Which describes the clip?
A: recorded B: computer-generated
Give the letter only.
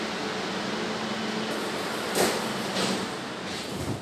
A